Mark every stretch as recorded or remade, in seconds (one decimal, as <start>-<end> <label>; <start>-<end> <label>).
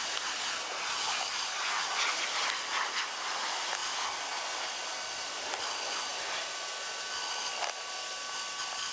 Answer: 0.0-8.9 recorded